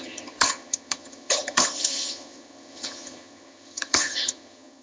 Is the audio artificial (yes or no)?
yes